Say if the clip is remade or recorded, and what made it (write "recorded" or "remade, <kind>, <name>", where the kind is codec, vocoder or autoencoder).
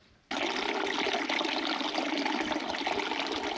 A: recorded